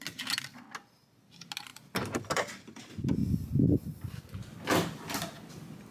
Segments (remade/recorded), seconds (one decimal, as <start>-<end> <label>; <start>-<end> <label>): 0.0-1.7 recorded; 1.7-2.8 remade; 2.8-5.9 recorded